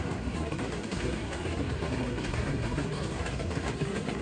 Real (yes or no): no